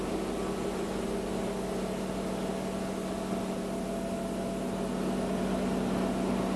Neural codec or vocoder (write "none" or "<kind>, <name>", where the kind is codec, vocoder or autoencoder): none